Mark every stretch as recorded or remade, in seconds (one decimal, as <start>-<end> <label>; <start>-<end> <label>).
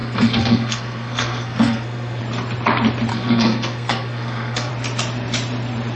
0.0-2.2 remade; 2.2-3.1 recorded; 3.1-4.7 remade; 4.7-6.0 recorded